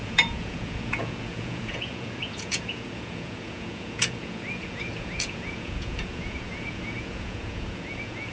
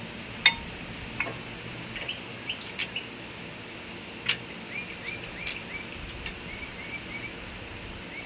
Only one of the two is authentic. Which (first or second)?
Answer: second